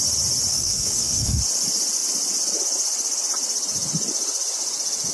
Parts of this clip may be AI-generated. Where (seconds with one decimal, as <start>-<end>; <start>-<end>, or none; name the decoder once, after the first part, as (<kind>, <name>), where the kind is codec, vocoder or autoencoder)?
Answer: 0.5-1.4 (codec, SNAC)

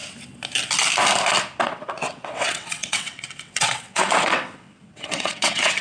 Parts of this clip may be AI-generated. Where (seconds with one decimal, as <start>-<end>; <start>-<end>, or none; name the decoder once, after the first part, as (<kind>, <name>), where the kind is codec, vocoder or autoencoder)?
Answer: 1.6-5.8 (vocoder, WaveNeXt)

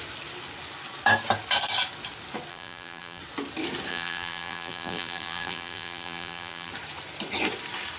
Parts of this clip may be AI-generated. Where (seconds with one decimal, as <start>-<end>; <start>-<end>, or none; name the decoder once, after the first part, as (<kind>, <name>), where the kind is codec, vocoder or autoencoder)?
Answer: 2.5-3.2 (vocoder, BigVGAN v2); 3.9-6.7

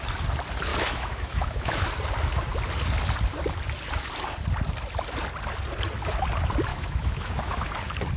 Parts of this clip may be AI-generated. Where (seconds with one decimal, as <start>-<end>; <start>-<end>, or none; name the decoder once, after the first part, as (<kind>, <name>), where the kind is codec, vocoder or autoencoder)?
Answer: 0.7-1.9 (autoencoder, DAC-VAE); 6.7-7.7